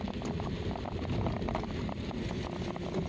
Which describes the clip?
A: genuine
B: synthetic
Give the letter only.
A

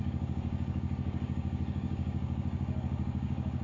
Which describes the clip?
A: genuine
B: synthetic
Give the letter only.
B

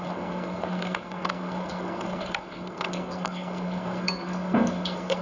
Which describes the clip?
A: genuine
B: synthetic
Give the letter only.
B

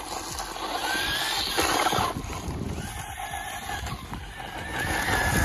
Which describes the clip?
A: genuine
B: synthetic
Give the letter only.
A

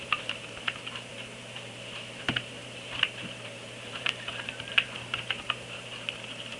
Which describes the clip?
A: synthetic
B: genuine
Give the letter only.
A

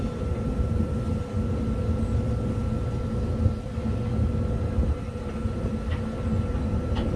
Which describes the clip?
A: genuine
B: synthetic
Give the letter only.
A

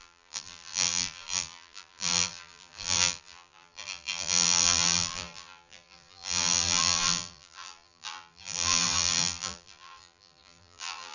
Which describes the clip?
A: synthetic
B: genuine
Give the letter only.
A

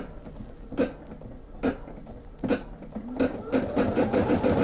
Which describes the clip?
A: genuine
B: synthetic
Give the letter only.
A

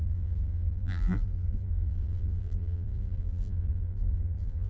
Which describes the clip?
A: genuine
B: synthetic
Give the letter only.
B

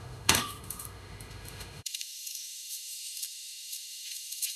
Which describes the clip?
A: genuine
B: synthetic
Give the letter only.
B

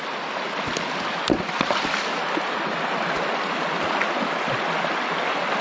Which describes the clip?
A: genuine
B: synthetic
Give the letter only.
A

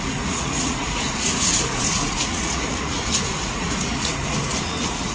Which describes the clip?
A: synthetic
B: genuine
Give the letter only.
A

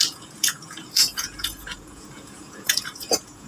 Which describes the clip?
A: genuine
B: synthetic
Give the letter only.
B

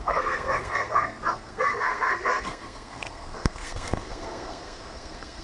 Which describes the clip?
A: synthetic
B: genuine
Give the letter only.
A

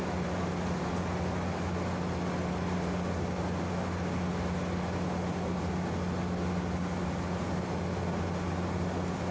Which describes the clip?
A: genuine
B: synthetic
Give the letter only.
A